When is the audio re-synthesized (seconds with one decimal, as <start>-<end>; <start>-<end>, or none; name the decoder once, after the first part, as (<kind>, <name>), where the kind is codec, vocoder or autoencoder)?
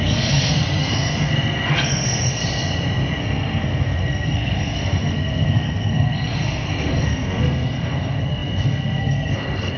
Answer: 0.0-2.4 (codec, SNAC); 3.2-9.8